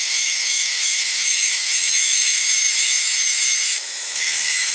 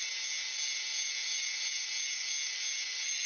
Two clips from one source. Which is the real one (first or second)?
second